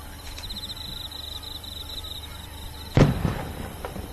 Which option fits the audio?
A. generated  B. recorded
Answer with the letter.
A